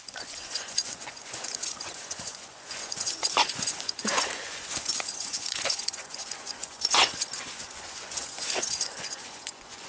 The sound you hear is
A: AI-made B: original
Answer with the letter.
A